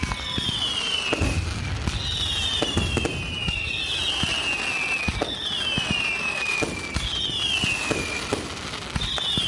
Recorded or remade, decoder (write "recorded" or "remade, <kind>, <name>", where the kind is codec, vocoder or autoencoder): recorded